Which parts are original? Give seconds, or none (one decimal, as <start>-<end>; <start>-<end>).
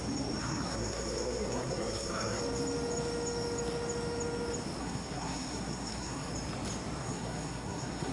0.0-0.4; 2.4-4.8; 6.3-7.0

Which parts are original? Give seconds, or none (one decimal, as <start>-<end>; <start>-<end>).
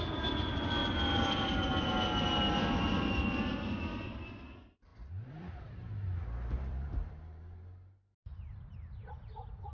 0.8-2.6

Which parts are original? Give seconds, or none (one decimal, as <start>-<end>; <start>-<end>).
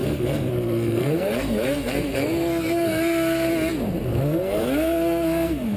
3.5-4.1